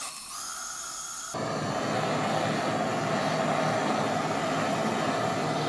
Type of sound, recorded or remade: recorded